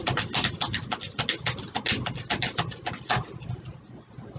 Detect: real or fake real